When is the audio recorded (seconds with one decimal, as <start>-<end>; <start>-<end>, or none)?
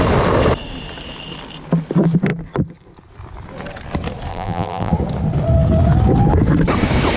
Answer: 0.0-4.3; 4.9-7.2